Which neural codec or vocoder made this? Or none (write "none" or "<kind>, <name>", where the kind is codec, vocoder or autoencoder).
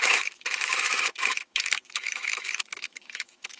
autoencoder, DAC-VAE